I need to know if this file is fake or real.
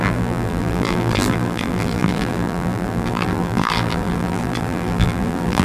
fake